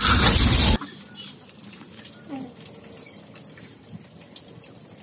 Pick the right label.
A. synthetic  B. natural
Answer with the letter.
B